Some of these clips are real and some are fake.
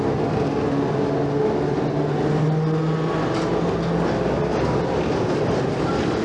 real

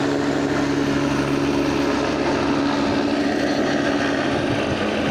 real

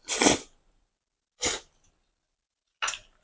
real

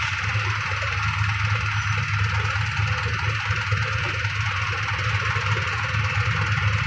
real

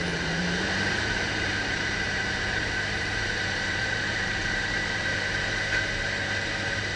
fake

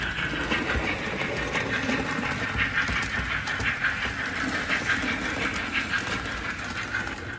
real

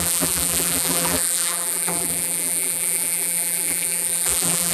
fake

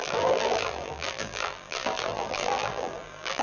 fake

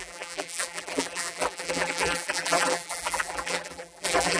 fake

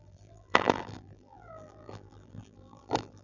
fake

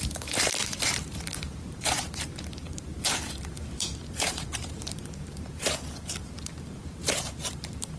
fake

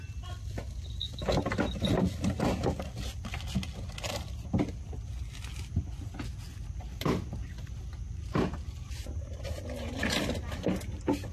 real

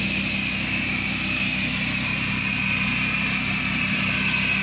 real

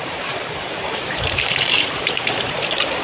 fake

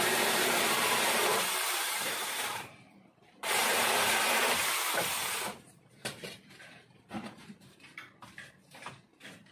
fake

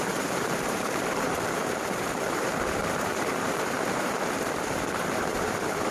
fake